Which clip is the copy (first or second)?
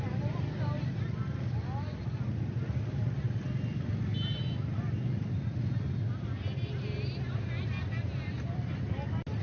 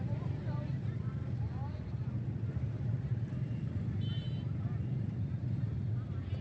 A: second